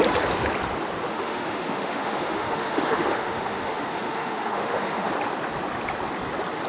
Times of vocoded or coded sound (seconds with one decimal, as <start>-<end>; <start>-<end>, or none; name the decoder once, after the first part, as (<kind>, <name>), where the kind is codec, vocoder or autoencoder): 1.1-5.1 (autoencoder, DAC-VAE)